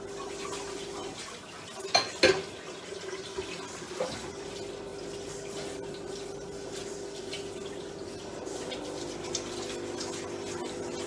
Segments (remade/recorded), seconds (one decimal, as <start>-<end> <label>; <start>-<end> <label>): 0.0-11.1 recorded